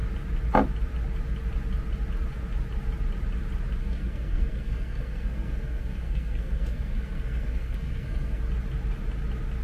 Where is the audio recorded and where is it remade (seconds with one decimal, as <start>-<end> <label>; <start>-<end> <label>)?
0.0-3.8 recorded; 3.8-8.4 remade; 8.4-9.6 recorded